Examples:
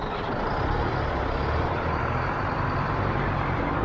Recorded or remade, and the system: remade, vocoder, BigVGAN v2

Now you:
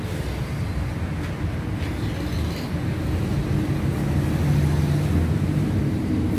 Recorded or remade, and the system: recorded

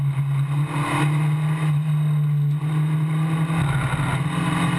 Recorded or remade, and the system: recorded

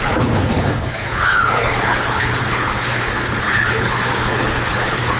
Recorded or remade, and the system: remade, codec, HILCodec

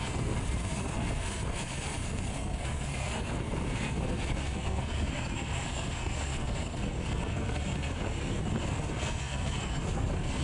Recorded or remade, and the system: remade, codec, SNAC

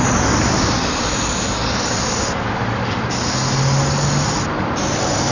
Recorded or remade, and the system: recorded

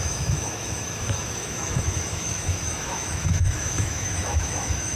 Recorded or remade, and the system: remade, autoencoder, DAC-VAE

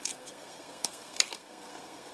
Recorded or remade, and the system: remade, codec, SNAC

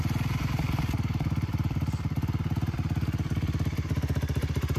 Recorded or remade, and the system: recorded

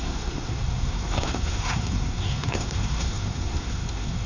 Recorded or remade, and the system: remade, codec, SNAC